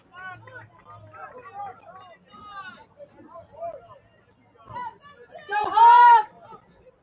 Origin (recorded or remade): recorded